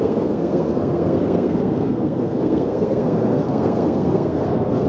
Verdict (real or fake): fake